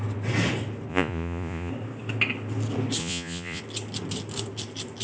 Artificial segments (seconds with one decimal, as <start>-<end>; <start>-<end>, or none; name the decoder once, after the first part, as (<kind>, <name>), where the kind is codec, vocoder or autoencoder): 0.9-1.7 (vocoder, Vocos); 3.0-3.6